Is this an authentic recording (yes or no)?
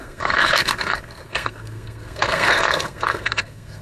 no